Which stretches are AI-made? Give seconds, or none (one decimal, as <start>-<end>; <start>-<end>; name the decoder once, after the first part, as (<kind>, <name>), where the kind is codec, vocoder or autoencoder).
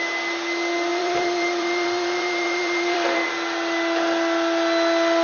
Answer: 0.9-3.3 (vocoder, BigVGAN v2)